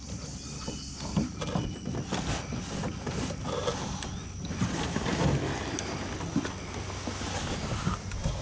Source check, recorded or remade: recorded